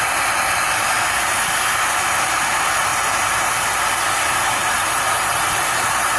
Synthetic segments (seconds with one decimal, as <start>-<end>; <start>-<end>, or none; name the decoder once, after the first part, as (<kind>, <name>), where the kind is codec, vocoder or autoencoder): none

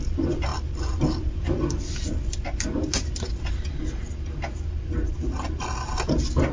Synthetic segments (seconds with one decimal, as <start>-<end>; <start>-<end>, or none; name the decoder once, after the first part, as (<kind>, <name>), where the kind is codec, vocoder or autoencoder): none

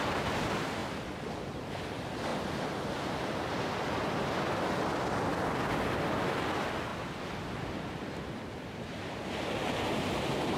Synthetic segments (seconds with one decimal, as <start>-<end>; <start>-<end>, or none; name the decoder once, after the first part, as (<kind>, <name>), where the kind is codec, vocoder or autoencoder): none

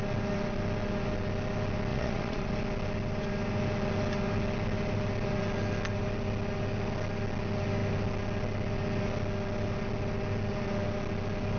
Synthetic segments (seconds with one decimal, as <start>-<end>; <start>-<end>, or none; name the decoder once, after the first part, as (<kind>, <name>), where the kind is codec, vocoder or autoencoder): 1.9-2.5 (vocoder, Vocos)

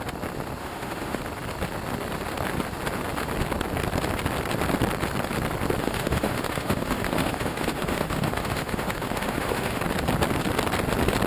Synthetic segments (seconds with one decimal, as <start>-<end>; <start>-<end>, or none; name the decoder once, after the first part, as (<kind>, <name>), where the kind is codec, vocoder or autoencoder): 0.6-1.2 (autoencoder, DAC-VAE); 5.8-9.8